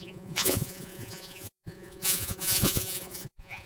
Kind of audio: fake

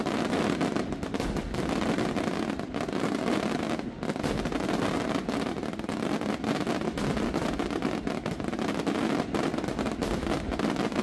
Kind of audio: real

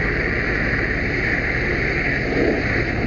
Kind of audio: real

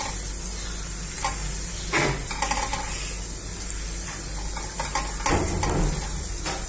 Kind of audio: real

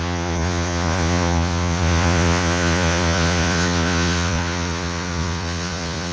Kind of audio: fake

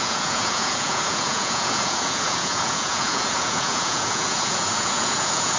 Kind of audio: fake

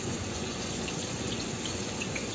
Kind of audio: fake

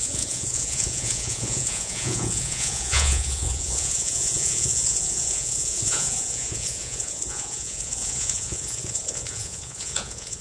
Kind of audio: fake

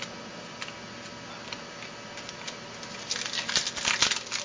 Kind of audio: real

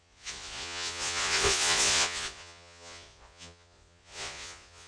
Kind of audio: fake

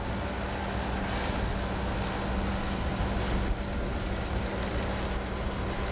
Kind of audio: real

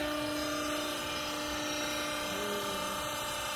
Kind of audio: real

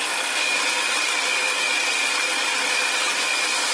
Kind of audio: real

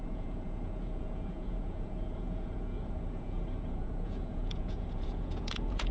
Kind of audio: fake